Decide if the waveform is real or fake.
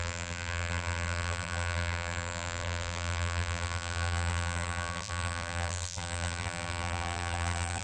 fake